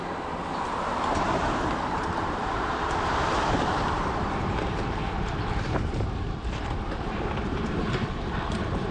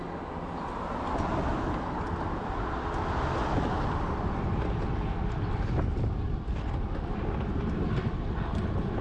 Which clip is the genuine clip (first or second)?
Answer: second